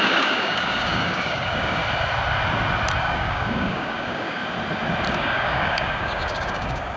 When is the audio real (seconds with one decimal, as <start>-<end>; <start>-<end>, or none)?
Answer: 1.8-3.0; 4.4-5.1